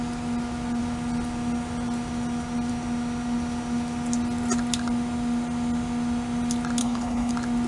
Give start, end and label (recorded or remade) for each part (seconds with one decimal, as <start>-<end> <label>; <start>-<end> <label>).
0.0-6.8 recorded; 6.8-7.3 remade; 7.3-7.7 recorded